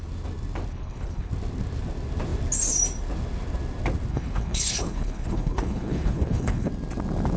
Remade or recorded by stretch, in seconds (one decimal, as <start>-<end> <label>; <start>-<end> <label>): 0.0-0.7 recorded; 0.7-1.3 remade; 1.3-4.1 recorded; 4.1-6.7 remade; 6.7-7.4 recorded